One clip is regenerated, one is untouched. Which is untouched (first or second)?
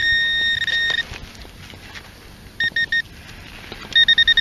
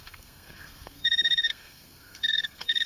first